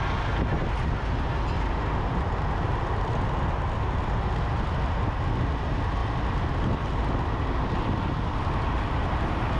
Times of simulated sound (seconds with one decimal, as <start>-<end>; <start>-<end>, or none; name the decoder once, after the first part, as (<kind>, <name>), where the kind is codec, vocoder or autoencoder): none